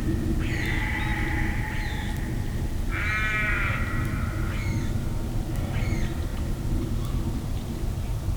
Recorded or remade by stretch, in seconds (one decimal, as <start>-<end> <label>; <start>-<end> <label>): 0.0-8.4 recorded